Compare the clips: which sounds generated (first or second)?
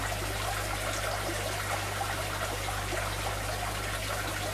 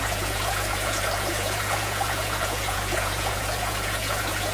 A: second